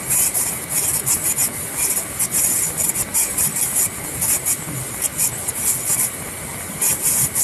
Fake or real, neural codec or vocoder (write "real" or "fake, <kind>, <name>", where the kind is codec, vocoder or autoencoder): real